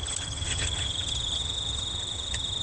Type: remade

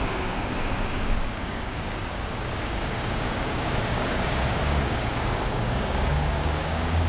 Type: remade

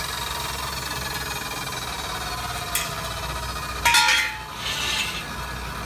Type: recorded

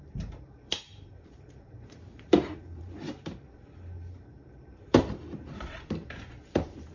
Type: remade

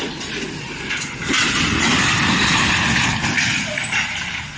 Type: recorded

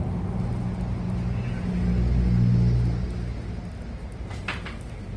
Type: recorded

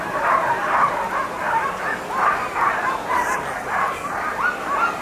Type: recorded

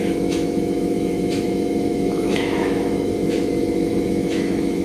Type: remade